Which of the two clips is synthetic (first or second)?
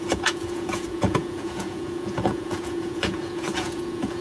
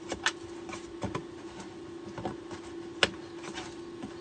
first